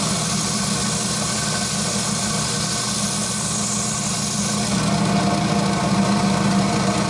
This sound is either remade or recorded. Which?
recorded